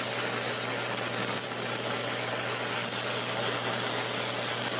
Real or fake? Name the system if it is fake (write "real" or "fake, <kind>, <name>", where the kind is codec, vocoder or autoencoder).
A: real